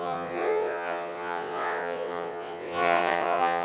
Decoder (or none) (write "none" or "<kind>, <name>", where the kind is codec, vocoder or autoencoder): vocoder, WaveNeXt